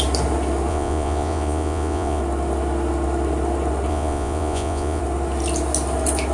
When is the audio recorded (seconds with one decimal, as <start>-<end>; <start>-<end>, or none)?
0.0-0.7; 2.2-3.9; 5.0-6.3